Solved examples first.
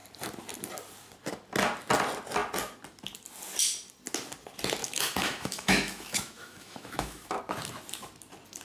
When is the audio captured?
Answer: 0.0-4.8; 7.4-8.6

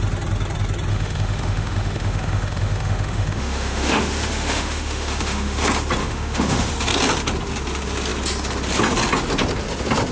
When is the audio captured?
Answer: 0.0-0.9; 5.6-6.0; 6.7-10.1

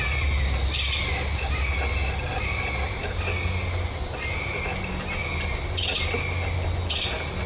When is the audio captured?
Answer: 0.0-7.5

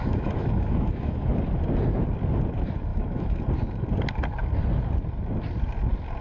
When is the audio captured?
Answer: 1.3-2.9; 3.4-6.2